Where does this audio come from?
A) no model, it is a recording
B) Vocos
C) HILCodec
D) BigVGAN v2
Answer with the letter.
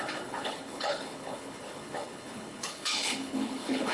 C